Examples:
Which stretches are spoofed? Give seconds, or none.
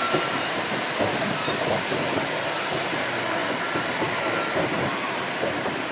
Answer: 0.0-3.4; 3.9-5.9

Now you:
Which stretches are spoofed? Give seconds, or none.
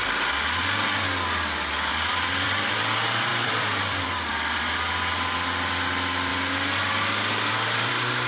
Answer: 1.9-2.7; 3.3-4.3